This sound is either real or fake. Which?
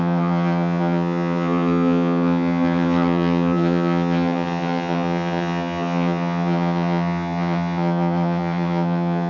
fake